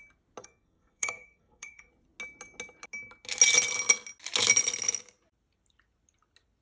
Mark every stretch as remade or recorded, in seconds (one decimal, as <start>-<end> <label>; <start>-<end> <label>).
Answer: 0.0-0.4 recorded; 0.4-1.9 remade; 1.9-6.6 recorded